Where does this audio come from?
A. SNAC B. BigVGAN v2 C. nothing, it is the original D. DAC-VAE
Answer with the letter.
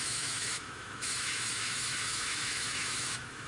D